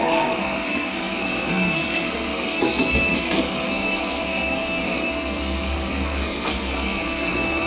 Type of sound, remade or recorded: remade